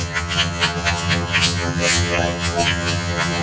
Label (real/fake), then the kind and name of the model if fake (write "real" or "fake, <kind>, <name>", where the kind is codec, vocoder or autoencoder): fake, vocoder, HiFi-GAN